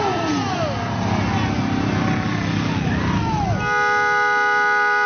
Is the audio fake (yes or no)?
no